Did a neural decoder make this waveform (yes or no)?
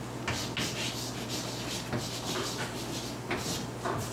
no